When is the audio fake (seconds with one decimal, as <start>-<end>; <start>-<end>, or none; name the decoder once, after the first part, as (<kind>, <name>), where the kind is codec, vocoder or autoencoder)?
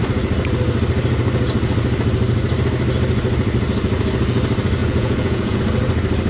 4.8-5.6 (vocoder, Vocos)